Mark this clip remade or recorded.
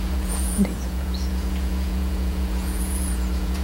remade